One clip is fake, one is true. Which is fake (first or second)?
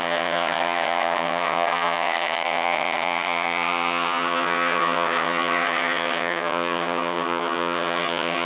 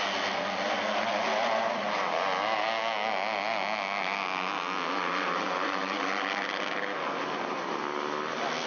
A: first